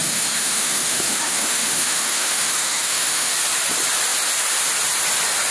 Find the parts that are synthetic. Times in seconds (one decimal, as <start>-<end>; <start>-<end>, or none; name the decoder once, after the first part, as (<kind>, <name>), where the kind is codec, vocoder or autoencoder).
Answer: 0.0-3.3 (autoencoder, DAC-VAE)